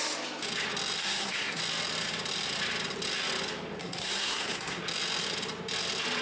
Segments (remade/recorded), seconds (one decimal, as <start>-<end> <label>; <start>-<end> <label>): 0.0-1.0 recorded; 1.0-1.6 remade; 1.6-3.8 recorded; 3.8-4.8 remade; 4.8-6.2 recorded